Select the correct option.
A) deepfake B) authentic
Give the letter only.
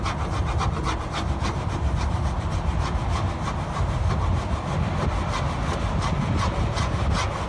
B